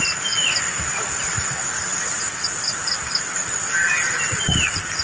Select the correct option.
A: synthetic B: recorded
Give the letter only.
B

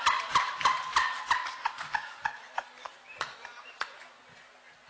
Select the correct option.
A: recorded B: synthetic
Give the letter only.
A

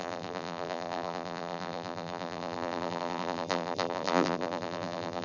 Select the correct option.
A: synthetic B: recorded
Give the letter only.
A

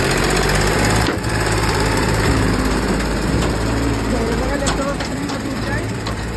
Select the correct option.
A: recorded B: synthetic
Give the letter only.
B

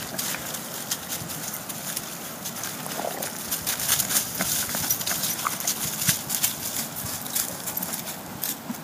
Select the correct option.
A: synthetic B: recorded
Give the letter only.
B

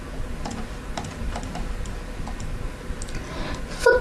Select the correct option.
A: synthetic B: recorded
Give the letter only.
A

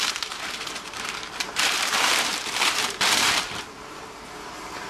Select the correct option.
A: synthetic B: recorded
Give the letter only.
A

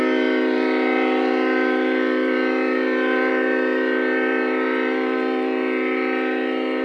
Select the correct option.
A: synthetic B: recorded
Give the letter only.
A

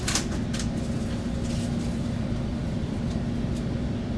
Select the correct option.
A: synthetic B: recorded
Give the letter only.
B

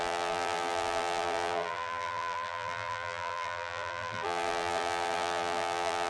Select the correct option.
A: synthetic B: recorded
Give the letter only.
A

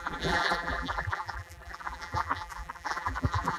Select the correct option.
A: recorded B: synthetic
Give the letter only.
B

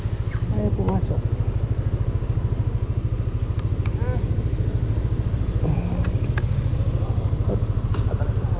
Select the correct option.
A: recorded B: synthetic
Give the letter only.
A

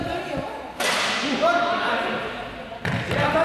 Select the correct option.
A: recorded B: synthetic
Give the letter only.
A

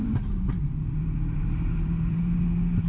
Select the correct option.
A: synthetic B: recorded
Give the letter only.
A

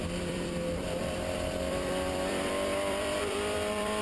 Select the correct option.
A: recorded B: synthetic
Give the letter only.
B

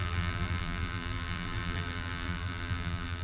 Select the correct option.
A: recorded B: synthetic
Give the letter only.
B